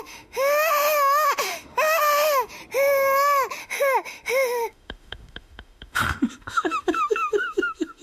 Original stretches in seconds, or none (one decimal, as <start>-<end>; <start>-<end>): 2.5-3.6